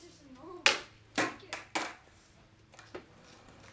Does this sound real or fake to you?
real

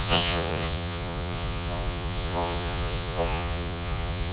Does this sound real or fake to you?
fake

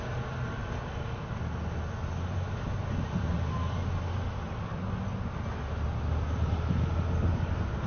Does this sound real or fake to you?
real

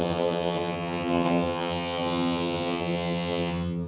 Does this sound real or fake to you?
fake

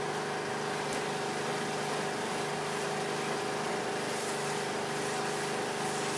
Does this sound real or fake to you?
real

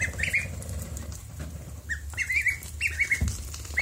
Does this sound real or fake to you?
real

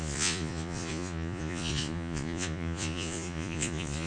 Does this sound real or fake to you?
fake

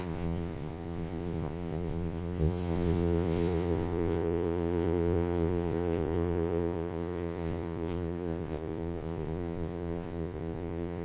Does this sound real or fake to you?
fake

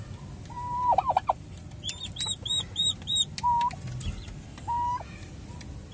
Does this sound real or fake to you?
real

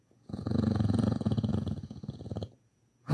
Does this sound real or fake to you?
fake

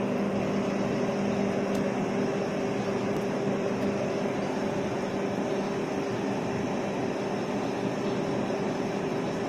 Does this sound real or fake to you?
real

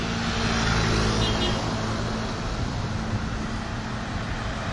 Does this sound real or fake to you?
real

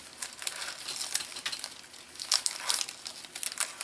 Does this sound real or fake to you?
real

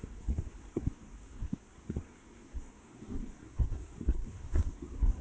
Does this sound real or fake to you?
fake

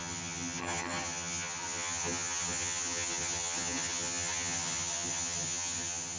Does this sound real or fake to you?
fake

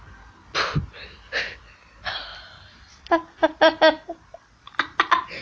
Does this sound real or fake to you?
real